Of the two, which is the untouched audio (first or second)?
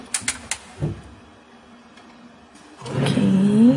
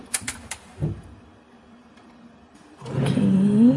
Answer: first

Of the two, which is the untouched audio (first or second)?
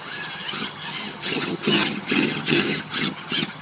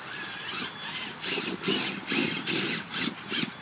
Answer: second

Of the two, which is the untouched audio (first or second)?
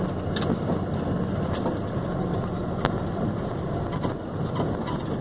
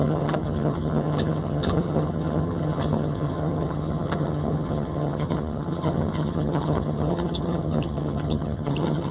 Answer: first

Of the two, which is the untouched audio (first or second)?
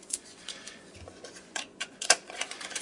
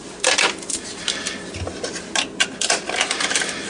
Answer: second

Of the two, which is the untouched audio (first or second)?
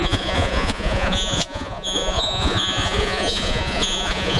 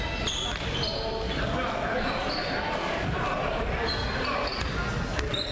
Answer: second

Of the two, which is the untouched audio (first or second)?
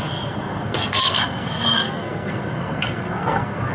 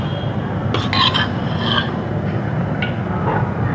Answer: second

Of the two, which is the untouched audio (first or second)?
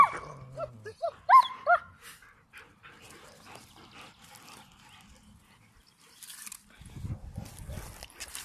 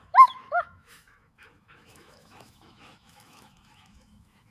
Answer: first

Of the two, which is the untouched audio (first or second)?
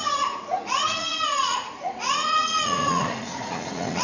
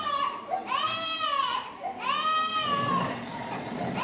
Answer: second